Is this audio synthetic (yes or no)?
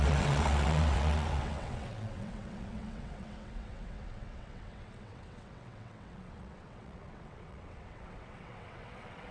yes